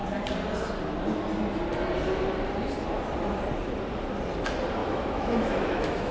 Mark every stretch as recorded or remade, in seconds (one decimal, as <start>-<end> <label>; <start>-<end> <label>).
0.0-4.8 recorded; 4.8-6.1 remade